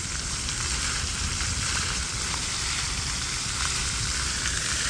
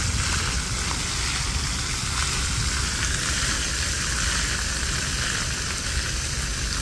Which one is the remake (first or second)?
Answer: first